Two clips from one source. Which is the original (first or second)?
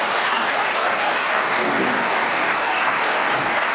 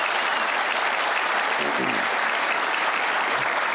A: second